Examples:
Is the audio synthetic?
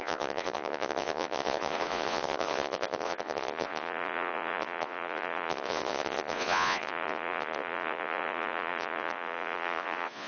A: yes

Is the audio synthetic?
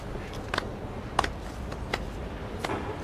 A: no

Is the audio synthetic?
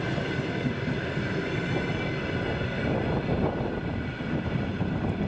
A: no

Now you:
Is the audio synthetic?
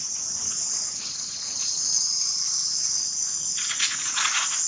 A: yes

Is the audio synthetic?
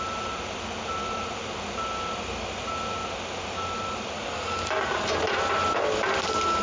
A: no